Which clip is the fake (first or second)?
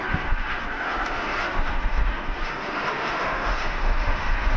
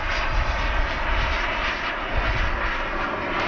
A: first